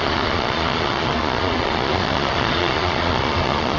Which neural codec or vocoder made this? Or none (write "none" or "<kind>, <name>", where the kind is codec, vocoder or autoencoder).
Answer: vocoder, Vocos